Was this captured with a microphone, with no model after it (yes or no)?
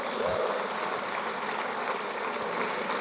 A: yes